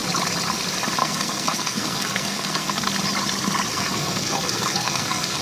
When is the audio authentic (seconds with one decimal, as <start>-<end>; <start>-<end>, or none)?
0.0-1.0; 2.8-3.7